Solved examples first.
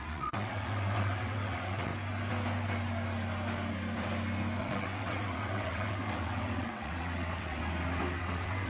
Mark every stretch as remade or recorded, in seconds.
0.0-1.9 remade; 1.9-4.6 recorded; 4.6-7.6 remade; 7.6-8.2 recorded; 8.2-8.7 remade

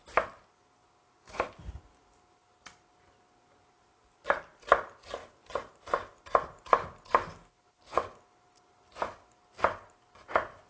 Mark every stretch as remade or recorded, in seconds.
0.0-10.7 recorded

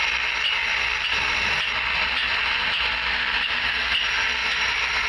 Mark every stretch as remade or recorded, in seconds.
0.0-4.4 recorded; 4.4-5.1 remade